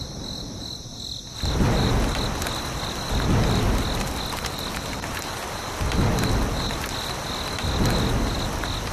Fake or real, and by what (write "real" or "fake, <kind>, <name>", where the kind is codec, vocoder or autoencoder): real